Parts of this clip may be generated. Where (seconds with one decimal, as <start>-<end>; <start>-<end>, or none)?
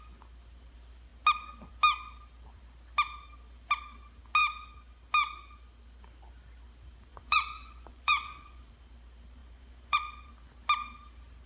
7.1-8.7; 9.4-10.3